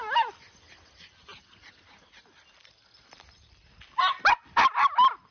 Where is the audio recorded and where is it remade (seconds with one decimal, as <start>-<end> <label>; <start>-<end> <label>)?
0.0-5.3 recorded